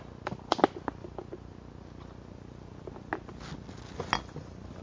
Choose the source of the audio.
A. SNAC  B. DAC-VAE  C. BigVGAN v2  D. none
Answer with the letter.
D